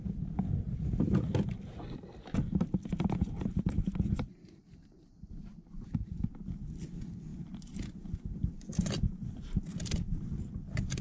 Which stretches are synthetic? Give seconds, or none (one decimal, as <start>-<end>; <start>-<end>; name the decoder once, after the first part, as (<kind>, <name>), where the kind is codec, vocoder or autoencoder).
none